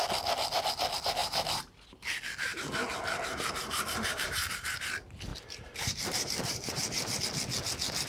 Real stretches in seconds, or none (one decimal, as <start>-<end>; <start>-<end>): 0.0-1.2; 1.7-2.5; 4.8-5.3; 7.2-8.1